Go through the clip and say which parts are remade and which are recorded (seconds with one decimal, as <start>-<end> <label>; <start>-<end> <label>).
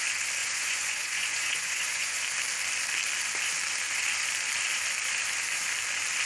0.0-0.4 recorded; 0.4-2.2 remade; 2.2-6.3 recorded